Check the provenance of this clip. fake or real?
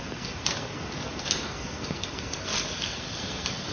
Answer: fake